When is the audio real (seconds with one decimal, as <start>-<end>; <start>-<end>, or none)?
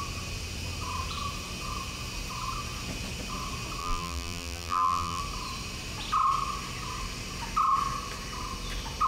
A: 0.0-3.8; 5.2-9.1